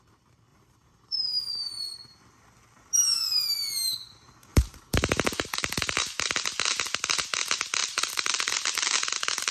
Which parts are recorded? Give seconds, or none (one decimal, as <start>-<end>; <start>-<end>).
0.0-0.5; 2.2-4.5; 6.3-7.8; 8.5-9.5